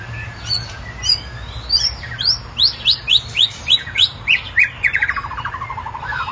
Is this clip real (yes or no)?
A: yes